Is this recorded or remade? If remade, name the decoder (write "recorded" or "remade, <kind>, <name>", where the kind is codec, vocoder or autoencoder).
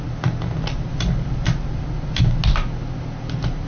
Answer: recorded